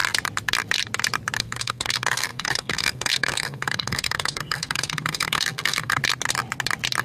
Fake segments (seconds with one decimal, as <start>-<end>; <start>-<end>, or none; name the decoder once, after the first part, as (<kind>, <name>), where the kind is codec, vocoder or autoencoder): 1.4-6.0 (codec, SNAC)